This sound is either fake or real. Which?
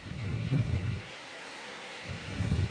fake